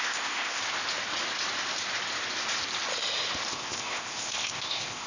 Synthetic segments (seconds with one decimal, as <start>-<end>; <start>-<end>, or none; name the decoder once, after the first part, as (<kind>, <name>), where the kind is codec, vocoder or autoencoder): 0.0-0.6 (codec, ZipCodec); 3.5-5.1